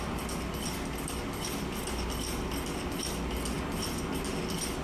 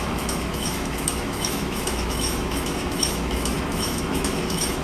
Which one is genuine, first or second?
first